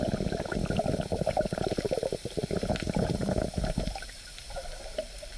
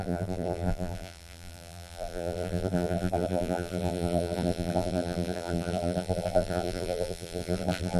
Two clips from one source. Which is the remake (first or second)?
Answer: second